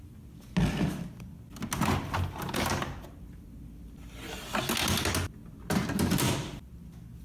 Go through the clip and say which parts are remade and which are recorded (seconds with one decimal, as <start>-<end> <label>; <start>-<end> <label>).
0.0-7.2 recorded